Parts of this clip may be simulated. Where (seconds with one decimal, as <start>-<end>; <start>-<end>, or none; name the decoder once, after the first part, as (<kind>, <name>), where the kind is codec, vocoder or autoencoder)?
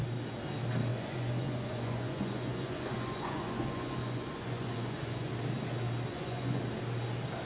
0.9-5.3 (vocoder, Vocos); 6.1-6.6